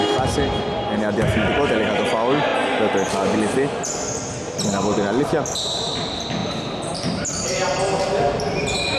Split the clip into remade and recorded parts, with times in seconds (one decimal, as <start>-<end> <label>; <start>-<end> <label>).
0.0-6.4 recorded; 6.4-7.2 remade; 7.2-9.0 recorded